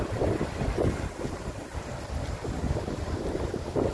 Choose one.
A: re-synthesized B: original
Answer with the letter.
B